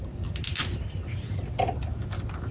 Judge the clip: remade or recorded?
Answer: recorded